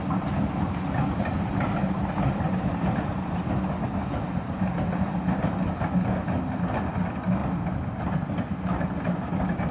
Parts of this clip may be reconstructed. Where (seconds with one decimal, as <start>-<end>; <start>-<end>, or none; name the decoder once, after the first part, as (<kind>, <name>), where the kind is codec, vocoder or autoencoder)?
none